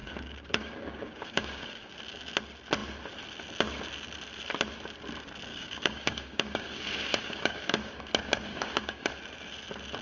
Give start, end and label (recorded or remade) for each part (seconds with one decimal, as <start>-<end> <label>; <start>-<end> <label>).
0.0-1.9 remade; 1.9-5.5 recorded; 5.5-8.1 remade; 8.1-8.5 recorded; 8.5-9.1 remade; 9.1-10.0 recorded